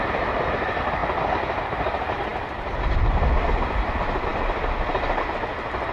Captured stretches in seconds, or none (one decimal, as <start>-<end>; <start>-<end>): 0.0-5.9